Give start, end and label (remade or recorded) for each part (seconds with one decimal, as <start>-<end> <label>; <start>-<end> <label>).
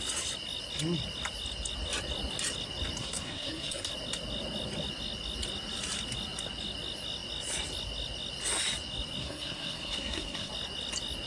0.0-3.0 recorded; 3.0-3.9 remade; 3.9-9.2 recorded; 9.2-10.5 remade; 10.5-11.3 recorded